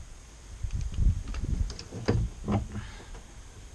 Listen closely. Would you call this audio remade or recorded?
recorded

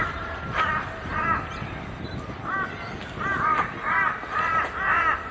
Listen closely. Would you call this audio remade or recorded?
recorded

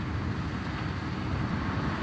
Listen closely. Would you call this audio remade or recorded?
recorded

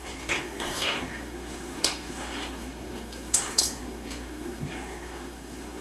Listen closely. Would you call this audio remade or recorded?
remade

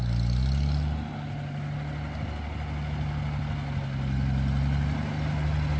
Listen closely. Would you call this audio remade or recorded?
recorded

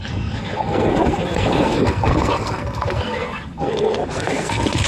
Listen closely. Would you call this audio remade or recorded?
remade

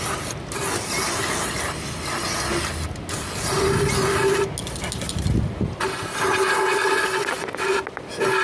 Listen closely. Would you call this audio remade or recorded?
recorded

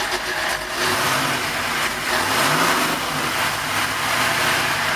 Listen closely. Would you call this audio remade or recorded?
recorded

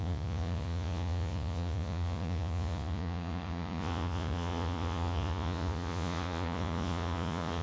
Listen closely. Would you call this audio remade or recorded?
remade